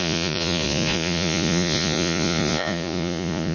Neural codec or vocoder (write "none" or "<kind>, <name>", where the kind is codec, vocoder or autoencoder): vocoder, Vocos